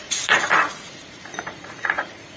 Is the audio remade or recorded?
remade